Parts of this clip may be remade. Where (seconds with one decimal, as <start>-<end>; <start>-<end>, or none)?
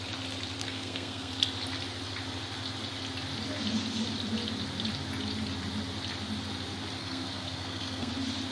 0.6-1.3; 7.0-8.1